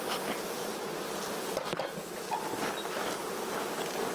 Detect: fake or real real